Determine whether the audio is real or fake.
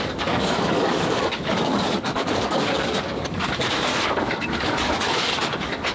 fake